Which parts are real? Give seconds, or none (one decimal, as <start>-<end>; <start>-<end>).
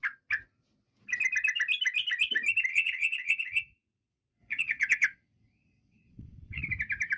0.0-2.7; 6.6-7.2